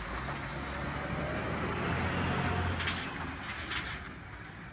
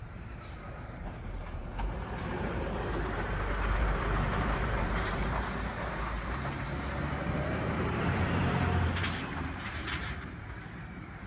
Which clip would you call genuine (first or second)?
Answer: first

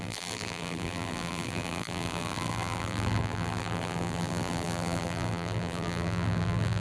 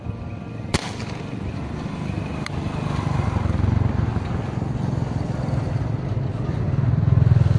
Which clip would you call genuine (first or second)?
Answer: second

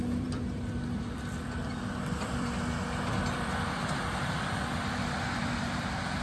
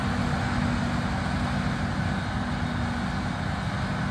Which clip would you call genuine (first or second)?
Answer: second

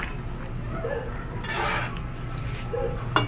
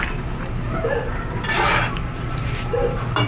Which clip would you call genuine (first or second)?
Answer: first